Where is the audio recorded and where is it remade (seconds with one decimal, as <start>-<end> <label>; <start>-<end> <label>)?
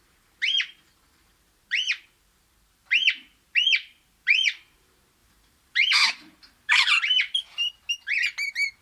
0.0-7.4 remade; 7.4-8.8 recorded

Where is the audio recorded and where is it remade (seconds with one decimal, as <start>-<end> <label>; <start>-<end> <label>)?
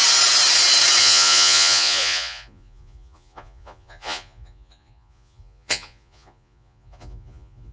0.0-1.0 recorded; 1.0-7.7 remade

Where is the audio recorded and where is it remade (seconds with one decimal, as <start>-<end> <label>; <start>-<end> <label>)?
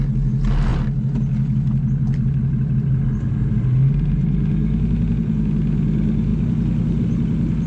0.0-7.7 recorded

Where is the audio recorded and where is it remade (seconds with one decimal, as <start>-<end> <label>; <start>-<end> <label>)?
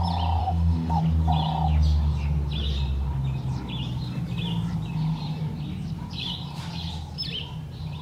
0.0-0.4 recorded; 0.4-1.0 remade; 1.0-8.0 recorded